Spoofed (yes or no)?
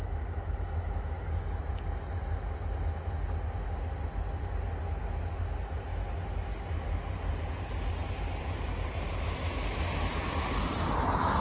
no